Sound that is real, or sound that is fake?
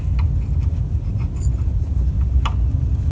real